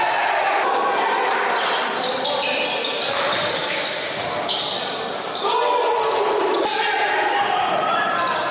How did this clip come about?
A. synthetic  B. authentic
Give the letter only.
B